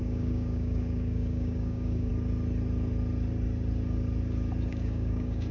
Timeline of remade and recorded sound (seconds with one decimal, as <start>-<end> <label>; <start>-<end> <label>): 0.0-2.1 remade; 2.1-4.7 recorded; 4.7-5.5 remade